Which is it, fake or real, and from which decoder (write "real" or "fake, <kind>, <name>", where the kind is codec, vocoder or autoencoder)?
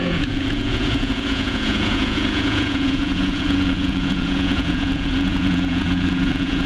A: fake, vocoder, Vocos